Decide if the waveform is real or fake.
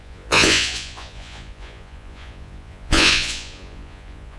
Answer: fake